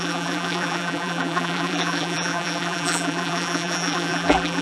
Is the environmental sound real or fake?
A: fake